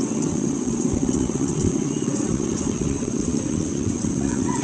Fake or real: fake